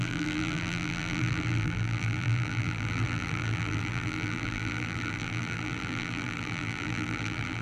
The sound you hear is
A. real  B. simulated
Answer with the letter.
B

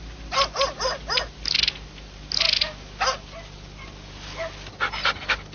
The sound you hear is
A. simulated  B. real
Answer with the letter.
B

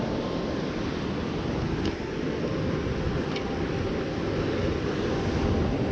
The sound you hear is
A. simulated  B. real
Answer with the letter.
B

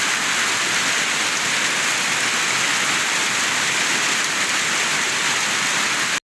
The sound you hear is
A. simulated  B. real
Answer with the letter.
B